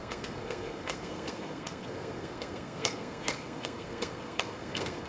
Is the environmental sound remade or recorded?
remade